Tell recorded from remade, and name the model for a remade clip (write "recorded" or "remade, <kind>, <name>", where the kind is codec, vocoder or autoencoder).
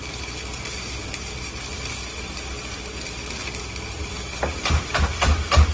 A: recorded